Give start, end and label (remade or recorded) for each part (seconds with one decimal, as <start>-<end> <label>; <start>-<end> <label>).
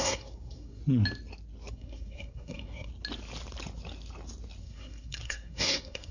0.0-0.8 remade; 0.8-1.7 recorded; 1.7-2.9 remade; 2.9-4.6 recorded; 4.6-6.1 remade